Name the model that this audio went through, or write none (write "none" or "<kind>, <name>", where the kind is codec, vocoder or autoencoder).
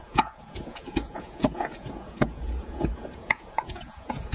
vocoder, Vocos